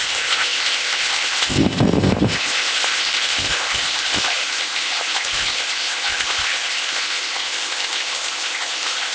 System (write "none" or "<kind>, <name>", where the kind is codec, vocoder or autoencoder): codec, ZipCodec